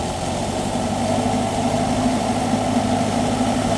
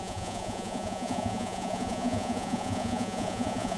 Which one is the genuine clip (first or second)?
first